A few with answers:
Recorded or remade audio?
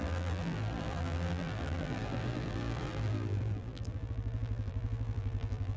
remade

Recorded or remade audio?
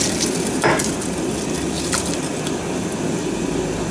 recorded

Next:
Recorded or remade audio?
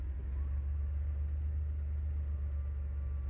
recorded